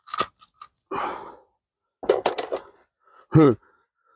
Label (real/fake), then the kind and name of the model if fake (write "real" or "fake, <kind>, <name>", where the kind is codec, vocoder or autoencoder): real